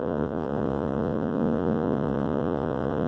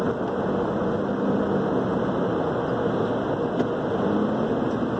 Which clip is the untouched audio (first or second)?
second